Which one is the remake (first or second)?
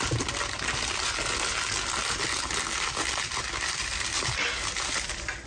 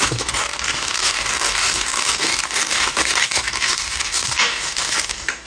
second